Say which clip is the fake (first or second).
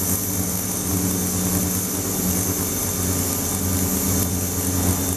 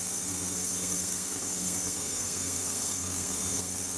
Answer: second